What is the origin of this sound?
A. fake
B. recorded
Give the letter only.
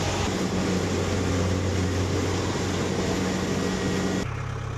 B